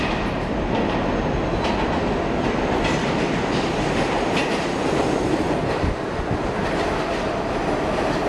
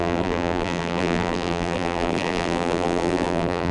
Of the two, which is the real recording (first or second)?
first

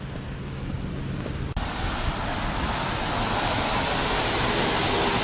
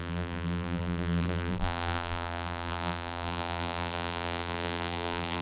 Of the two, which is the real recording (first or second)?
first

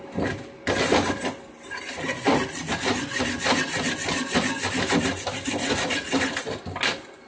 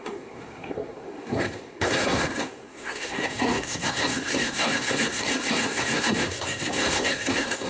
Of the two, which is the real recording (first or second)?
first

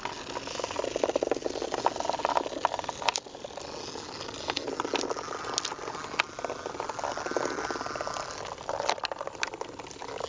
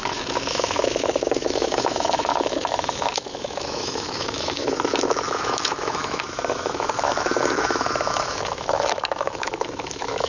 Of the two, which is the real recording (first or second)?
first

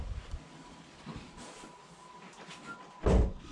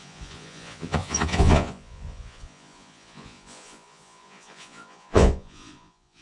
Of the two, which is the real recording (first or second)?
first